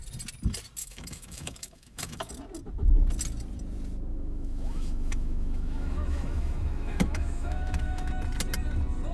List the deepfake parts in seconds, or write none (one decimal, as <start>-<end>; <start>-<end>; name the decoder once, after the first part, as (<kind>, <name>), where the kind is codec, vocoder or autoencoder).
0.8-2.3 (autoencoder, DAC-VAE); 4.1-8.1